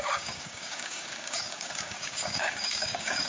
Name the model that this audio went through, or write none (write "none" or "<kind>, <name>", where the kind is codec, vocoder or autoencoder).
codec, DAC